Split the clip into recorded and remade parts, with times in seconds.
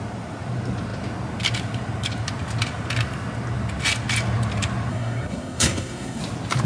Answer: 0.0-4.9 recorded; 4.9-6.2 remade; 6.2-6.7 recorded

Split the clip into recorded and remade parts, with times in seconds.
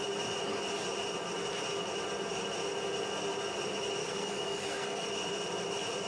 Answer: 0.0-4.0 recorded; 4.0-5.1 remade; 5.1-6.1 recorded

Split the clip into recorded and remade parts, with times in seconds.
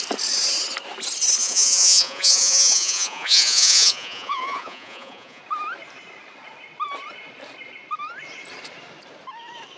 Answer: 0.0-1.4 recorded; 1.4-5.4 remade; 5.4-9.8 recorded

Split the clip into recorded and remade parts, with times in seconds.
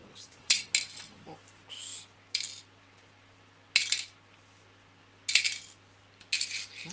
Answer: 0.0-0.7 remade; 0.7-6.9 recorded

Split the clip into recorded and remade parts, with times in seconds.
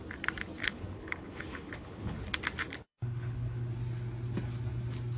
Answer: 0.0-0.6 recorded; 0.6-2.2 remade; 2.2-2.8 recorded; 2.8-3.7 remade; 3.7-5.2 recorded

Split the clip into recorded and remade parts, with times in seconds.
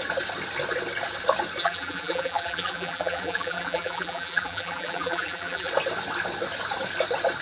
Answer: 0.0-1.6 recorded; 1.6-5.7 remade; 5.7-7.4 recorded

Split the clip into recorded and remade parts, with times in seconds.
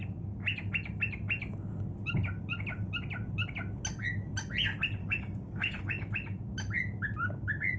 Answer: 0.0-5.0 recorded; 5.0-6.1 remade; 6.1-7.8 recorded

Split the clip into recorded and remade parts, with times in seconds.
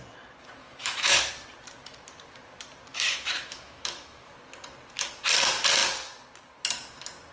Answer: 0.0-0.6 recorded; 0.6-1.3 remade; 1.3-2.9 recorded; 2.9-4.3 remade; 4.3-7.3 recorded